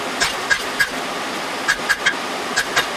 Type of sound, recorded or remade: recorded